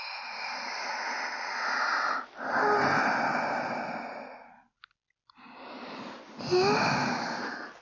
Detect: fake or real real